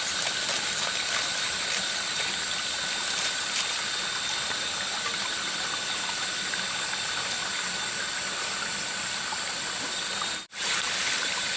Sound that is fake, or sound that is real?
real